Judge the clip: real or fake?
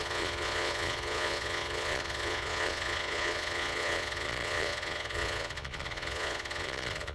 fake